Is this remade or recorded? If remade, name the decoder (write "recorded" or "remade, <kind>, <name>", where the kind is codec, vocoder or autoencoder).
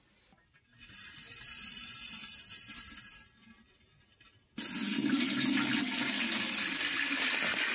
recorded